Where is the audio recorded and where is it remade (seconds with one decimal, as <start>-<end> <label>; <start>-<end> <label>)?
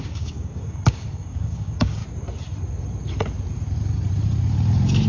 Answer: 0.0-2.0 remade; 2.0-5.1 recorded